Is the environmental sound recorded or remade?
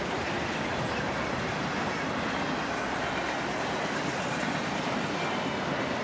recorded